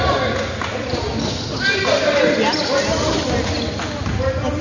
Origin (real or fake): real